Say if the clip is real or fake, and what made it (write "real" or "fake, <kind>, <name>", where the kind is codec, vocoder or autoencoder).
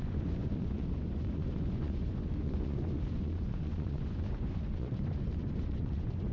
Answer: fake, vocoder, Vocos